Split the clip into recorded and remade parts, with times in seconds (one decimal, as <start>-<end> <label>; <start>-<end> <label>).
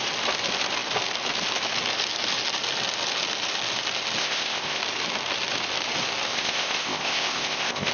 0.0-4.2 recorded; 4.2-4.8 remade; 4.8-6.3 recorded; 6.3-7.9 remade